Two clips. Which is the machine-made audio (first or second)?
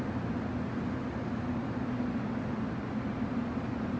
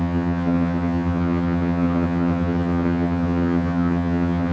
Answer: second